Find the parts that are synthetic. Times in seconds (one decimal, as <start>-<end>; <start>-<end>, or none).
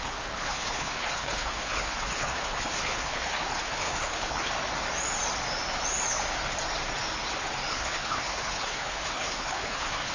0.0-4.5; 7.7-10.1